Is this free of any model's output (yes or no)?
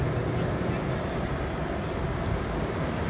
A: yes